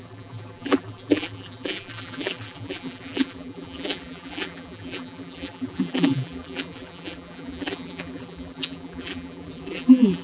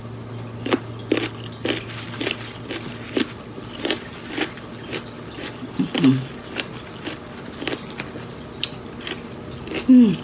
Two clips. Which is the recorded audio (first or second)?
second